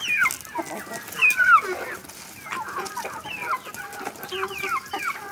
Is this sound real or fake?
real